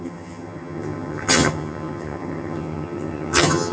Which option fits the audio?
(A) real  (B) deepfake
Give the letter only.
B